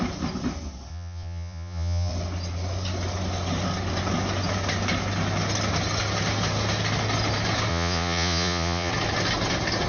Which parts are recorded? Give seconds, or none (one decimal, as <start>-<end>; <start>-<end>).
0.0-0.9; 2.1-7.7; 8.9-9.9